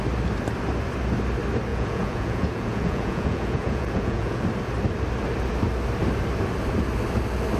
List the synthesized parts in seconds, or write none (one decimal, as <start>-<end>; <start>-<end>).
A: 1.7-4.4

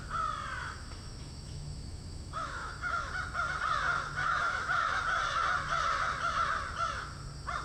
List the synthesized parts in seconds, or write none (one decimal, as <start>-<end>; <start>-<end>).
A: 0.6-3.1; 4.2-5.0

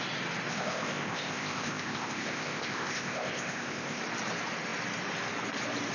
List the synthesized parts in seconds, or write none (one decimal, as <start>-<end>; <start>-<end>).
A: 0.5-4.0

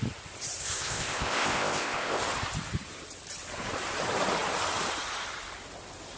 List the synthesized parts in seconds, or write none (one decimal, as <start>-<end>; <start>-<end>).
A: 0.6-2.2

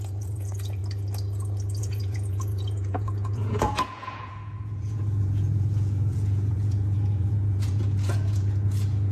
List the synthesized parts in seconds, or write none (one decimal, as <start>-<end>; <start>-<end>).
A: 0.0-0.8; 1.8-9.1

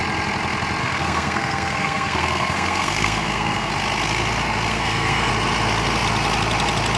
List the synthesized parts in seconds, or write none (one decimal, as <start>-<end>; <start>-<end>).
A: 0.8-3.7; 4.7-5.3